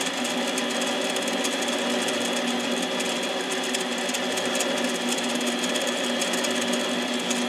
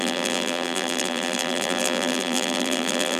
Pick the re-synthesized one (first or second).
second